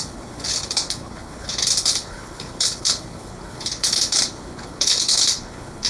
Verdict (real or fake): fake